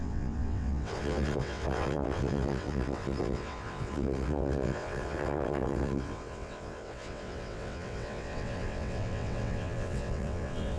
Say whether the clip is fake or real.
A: fake